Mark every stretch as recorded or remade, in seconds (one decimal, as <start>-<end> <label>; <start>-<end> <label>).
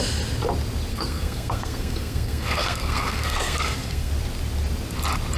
0.0-0.9 recorded; 0.9-4.1 remade; 4.1-5.4 recorded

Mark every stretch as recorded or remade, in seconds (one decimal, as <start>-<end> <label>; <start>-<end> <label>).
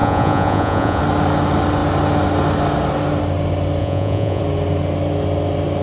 0.0-1.0 remade; 1.0-3.8 recorded; 3.8-4.4 remade; 4.4-5.8 recorded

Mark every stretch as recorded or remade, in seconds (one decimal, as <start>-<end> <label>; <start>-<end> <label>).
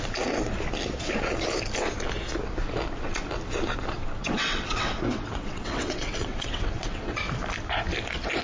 0.0-4.2 recorded; 4.2-7.2 remade; 7.2-8.4 recorded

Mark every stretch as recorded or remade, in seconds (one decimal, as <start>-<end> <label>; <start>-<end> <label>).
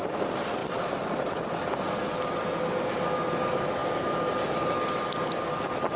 0.0-6.0 recorded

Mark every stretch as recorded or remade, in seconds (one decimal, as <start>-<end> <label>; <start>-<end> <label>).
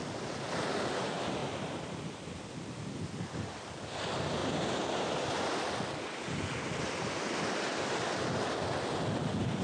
0.0-1.4 recorded; 1.4-2.2 remade; 2.2-4.4 recorded; 4.4-5.6 remade; 5.6-9.6 recorded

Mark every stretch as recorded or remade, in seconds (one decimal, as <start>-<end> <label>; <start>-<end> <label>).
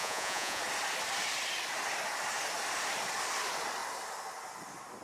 0.0-0.6 remade; 0.6-5.0 recorded